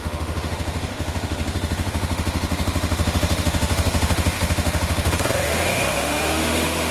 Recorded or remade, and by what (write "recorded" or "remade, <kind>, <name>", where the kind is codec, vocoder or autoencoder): remade, autoencoder, DAC-VAE